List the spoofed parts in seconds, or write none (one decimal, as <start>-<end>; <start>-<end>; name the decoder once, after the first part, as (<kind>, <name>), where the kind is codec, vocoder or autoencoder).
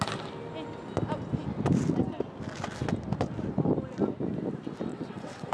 4.9-5.5 (vocoder, WaveNeXt)